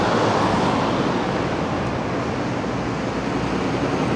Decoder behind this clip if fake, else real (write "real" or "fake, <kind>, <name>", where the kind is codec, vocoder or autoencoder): real